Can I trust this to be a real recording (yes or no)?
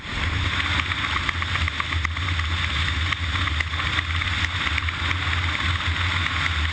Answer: yes